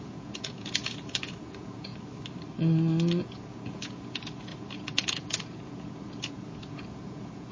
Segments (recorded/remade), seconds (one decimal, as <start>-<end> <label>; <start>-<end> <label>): 0.0-1.9 remade; 1.9-3.2 recorded; 3.2-7.5 remade